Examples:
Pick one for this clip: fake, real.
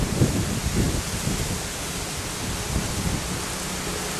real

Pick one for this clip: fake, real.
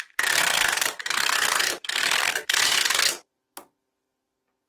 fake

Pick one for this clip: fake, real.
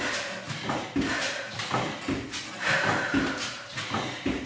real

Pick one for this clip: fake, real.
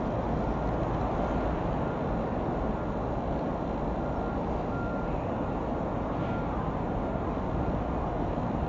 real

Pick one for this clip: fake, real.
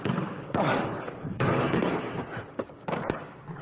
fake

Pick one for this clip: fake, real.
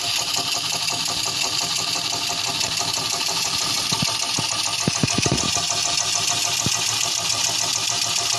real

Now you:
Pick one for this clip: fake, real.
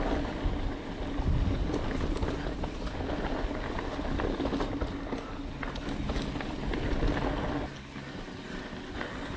real